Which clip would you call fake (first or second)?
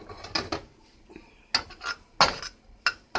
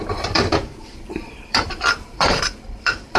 second